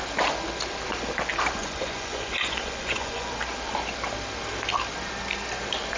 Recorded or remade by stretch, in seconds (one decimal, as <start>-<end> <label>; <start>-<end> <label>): 0.0-1.6 recorded; 1.6-3.3 remade; 3.3-6.0 recorded